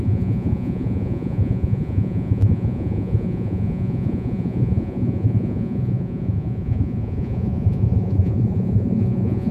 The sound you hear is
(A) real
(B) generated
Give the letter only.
B